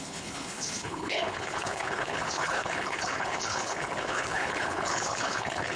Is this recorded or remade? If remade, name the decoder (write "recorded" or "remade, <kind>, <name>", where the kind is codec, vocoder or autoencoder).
remade, codec, HILCodec